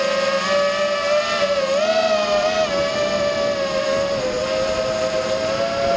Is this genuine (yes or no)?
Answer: yes